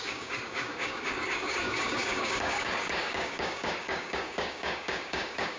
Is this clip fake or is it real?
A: fake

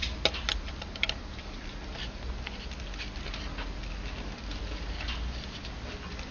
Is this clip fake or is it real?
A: real